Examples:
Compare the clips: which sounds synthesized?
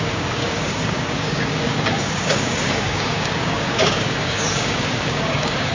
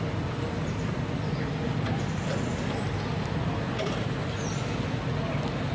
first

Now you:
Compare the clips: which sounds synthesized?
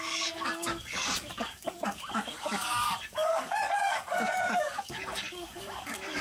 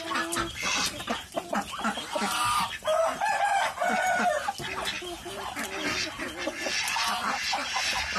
first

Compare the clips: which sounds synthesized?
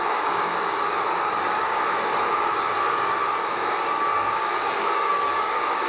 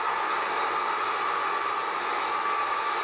first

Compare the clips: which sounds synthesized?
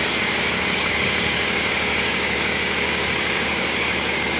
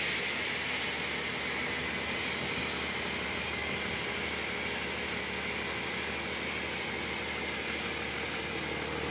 first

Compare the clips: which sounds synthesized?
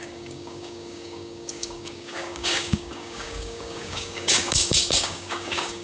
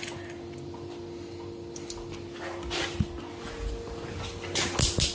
first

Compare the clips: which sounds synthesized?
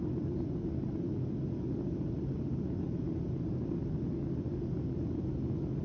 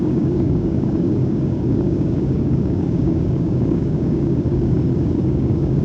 second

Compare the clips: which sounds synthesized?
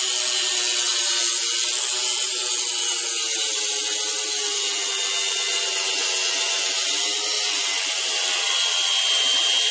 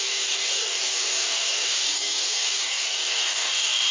second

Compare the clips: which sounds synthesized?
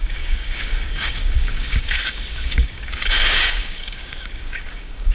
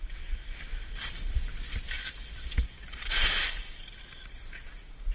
first